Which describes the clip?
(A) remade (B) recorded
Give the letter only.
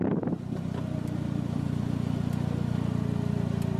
B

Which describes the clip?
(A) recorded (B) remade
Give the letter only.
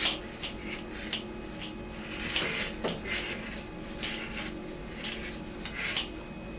A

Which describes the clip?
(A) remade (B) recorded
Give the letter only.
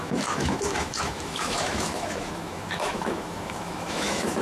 A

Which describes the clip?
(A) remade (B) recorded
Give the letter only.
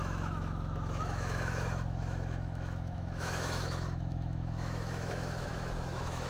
A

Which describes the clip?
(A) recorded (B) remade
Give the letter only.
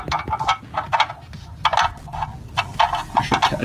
A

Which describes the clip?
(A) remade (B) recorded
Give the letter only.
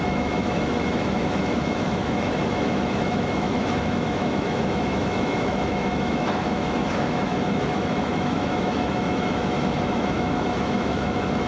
A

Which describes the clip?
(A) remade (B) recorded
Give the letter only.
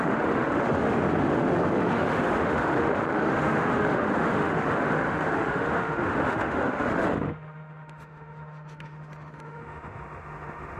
A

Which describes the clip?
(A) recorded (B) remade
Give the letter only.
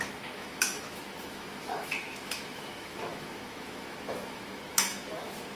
B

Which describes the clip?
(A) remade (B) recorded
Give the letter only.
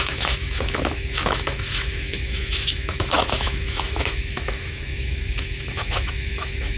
A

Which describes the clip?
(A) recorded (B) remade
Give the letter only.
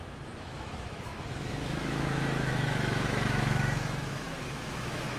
B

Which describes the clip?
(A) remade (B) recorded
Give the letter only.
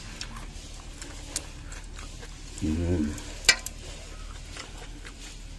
B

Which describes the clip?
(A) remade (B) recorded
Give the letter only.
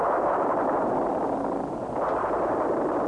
B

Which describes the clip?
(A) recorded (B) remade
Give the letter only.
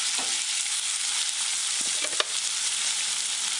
A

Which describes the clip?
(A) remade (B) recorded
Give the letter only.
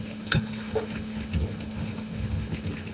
A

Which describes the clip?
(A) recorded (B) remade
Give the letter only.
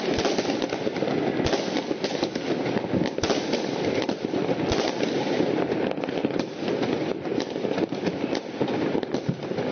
A